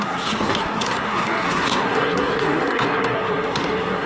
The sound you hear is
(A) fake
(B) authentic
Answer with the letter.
A